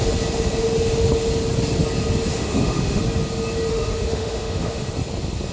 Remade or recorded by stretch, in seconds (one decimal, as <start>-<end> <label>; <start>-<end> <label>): 0.0-2.3 recorded; 2.3-3.0 remade; 3.0-3.7 recorded; 3.7-4.9 remade; 4.9-5.5 recorded